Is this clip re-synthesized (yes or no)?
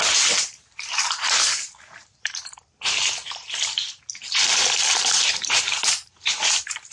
yes